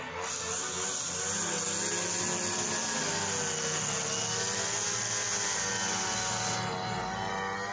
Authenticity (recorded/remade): recorded